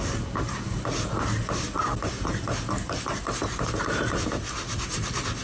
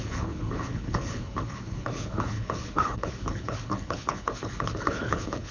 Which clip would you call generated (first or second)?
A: second